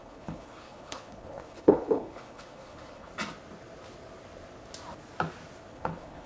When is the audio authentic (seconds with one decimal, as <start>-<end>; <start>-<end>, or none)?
3.1-5.7